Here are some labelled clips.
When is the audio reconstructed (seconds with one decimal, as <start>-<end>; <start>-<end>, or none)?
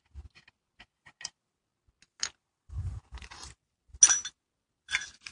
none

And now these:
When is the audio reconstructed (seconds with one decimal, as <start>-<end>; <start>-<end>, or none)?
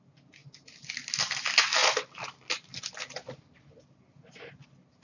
none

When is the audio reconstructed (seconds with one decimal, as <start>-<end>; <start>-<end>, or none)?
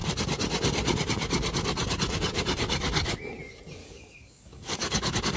3.8-5.4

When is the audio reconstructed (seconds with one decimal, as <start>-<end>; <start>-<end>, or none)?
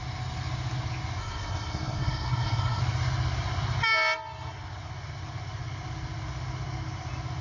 1.2-2.8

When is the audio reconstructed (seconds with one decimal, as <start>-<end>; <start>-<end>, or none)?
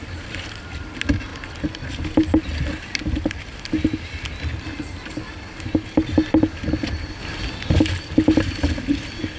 none